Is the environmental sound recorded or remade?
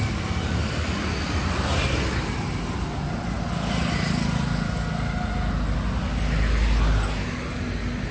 recorded